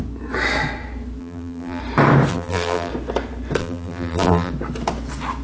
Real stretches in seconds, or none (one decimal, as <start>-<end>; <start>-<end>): 0.0-1.2; 1.8-2.3; 2.9-3.6; 4.5-5.4